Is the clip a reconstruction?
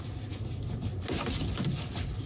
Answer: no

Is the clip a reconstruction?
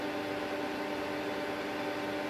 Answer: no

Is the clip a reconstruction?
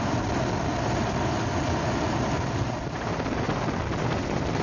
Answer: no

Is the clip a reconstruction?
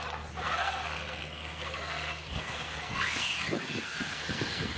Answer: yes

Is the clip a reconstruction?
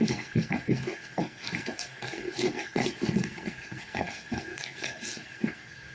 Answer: yes